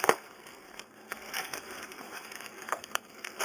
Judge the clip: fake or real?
fake